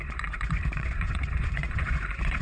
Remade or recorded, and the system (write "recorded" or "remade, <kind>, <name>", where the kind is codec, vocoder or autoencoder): remade, vocoder, Vocos